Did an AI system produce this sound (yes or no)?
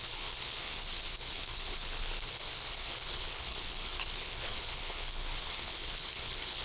yes